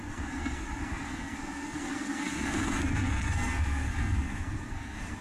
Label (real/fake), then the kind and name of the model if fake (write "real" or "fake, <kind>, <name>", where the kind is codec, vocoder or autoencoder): fake, codec, SNAC